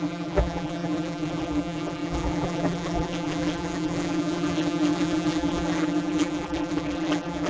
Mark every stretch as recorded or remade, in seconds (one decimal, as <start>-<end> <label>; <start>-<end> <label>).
0.0-7.5 remade